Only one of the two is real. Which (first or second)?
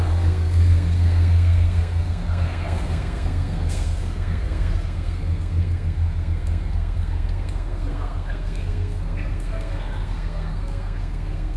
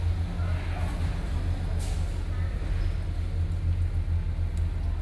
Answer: second